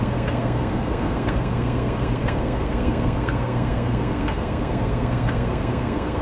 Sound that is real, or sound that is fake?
fake